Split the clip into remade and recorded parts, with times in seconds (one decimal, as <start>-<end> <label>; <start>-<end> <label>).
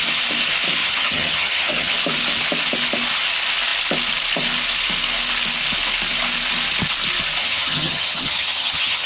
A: 0.0-0.8 recorded; 0.8-1.9 remade; 1.9-7.4 recorded; 7.4-9.1 remade